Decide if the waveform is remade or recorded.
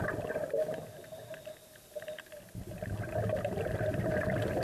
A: recorded